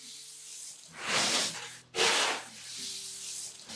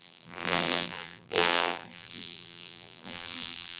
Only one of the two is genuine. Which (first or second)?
first